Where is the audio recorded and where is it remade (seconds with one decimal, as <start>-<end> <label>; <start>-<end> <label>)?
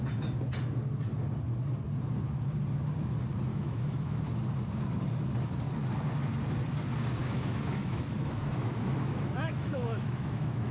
0.0-3.5 recorded; 3.5-4.2 remade; 4.2-7.2 recorded; 7.2-10.7 remade